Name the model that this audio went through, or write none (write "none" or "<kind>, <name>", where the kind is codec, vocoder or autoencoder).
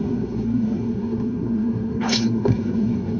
codec, SNAC